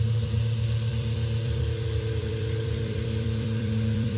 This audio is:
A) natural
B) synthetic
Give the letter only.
B